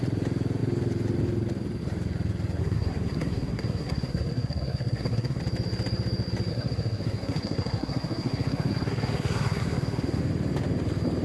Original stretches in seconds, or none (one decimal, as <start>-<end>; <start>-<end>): 0.0-2.6; 5.4-6.5; 10.2-11.2